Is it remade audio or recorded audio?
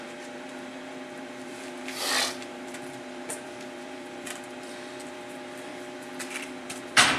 remade